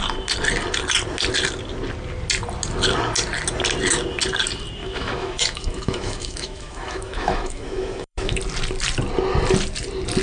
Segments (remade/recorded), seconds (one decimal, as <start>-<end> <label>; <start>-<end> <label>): 0.0-4.8 recorded; 4.8-8.4 remade; 8.4-10.2 recorded